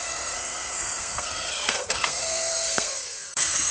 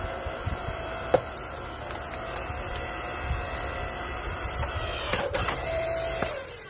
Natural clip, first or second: second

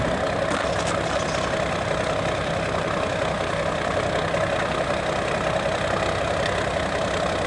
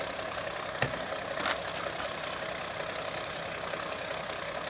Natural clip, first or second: first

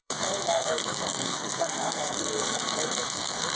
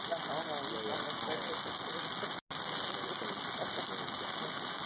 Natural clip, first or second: second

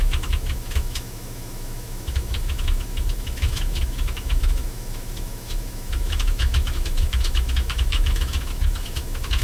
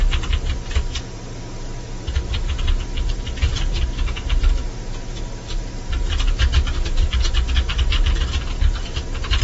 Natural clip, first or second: second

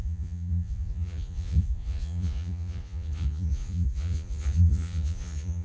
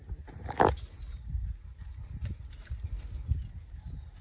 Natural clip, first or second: second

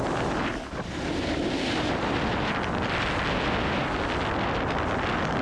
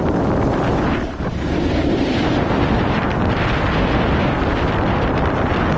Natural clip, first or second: first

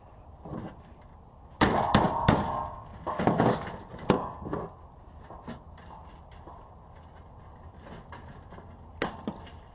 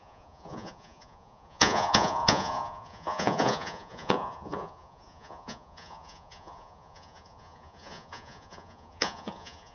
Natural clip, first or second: first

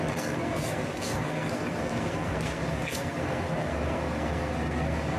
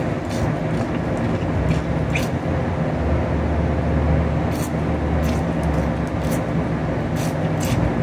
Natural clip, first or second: second